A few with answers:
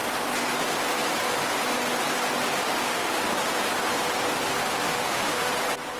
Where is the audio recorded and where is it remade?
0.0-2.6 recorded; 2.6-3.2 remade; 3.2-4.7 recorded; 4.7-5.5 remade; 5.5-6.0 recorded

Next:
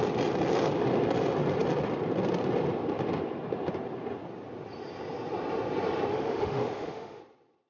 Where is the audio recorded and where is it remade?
0.0-6.1 recorded; 6.1-7.2 remade; 7.2-7.7 recorded

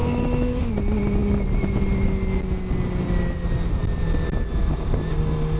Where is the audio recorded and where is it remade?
0.0-0.7 remade; 0.7-5.6 recorded

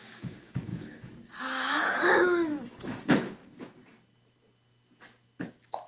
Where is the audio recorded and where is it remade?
0.0-3.4 remade; 3.4-5.5 recorded; 5.5-5.9 remade

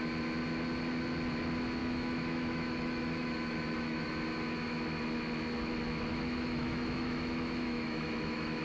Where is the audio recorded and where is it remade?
0.0-1.8 recorded; 1.8-4.1 remade; 4.1-6.1 recorded; 6.1-8.6 remade

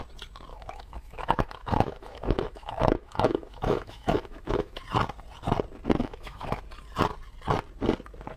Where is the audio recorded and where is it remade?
0.0-0.5 recorded; 0.5-4.8 remade; 4.8-6.0 recorded; 6.0-6.6 remade; 6.6-8.4 recorded

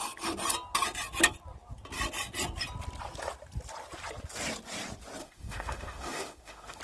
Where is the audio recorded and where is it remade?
0.0-5.2 recorded; 5.2-6.8 remade

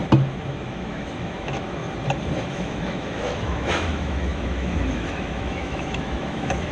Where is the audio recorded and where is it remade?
0.0-0.5 recorded; 0.5-1.8 remade; 1.8-2.5 recorded; 2.5-6.7 remade